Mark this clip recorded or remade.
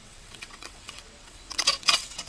remade